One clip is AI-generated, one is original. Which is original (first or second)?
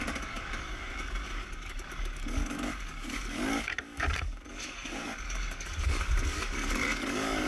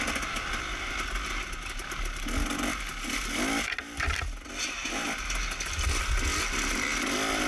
second